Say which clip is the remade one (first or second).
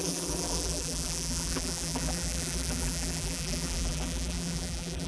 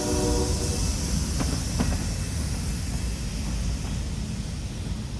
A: first